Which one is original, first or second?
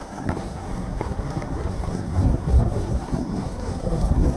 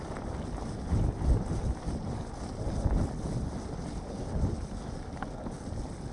second